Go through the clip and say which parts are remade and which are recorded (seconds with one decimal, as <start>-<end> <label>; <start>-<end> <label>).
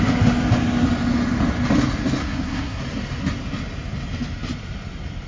0.0-2.2 recorded; 2.2-2.8 remade; 2.8-5.3 recorded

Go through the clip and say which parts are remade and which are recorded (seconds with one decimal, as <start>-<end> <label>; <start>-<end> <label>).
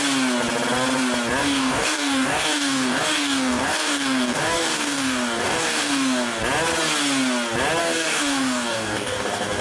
0.0-1.4 recorded; 1.4-6.4 remade; 6.4-7.8 recorded; 7.8-9.6 remade